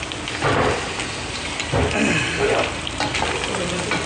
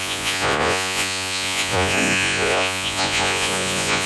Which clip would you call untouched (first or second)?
first